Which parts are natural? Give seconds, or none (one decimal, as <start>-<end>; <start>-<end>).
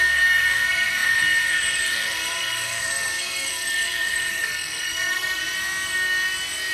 5.4-6.7